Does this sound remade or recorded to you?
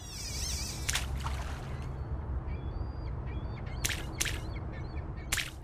recorded